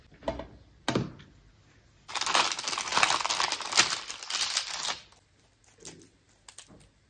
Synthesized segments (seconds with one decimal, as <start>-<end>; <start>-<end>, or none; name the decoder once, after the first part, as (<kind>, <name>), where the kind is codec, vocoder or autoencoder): none